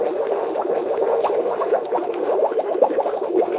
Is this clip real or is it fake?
fake